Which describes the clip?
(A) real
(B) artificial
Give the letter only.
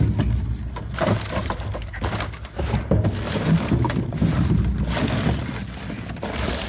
A